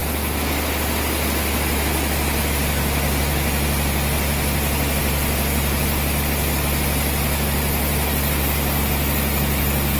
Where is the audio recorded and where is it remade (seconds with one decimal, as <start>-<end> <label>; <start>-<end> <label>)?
0.0-10.0 recorded